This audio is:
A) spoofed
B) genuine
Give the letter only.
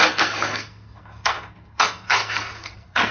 A